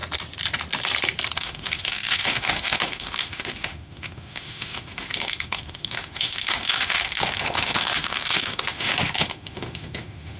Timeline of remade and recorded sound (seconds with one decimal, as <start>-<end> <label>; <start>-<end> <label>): 0.0-1.4 recorded; 1.4-10.4 remade